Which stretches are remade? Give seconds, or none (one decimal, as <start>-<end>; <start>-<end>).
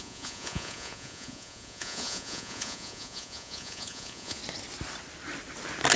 0.0-4.4